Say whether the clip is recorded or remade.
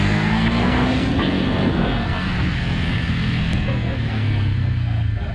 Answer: remade